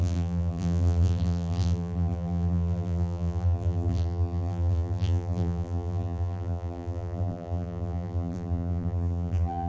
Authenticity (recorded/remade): remade